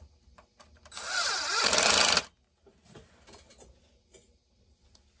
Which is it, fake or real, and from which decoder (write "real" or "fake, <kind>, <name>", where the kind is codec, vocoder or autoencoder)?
real